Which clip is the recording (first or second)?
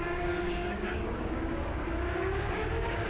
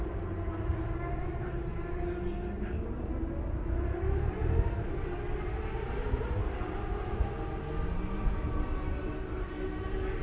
second